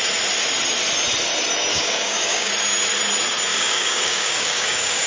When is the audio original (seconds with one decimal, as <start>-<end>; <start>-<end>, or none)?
0.0-1.7; 2.5-3.5